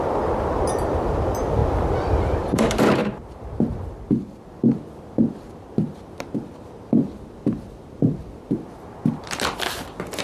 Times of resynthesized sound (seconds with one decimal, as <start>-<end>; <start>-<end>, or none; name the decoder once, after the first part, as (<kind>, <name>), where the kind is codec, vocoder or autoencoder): 0.0-3.0 (vocoder, BigVGAN v2); 4.6-10.2